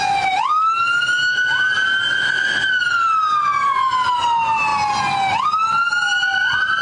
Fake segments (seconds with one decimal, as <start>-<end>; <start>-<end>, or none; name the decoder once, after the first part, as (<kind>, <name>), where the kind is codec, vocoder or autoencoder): none